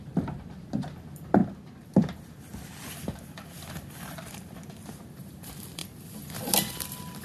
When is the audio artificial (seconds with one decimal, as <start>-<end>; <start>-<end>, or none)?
0.0-1.4; 3.7-7.2